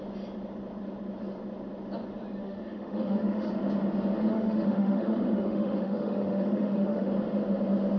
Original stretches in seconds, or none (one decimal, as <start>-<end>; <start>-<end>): 0.0-2.4; 3.5-4.3; 7.1-8.0